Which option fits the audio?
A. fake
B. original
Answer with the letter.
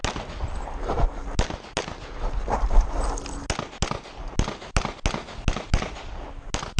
B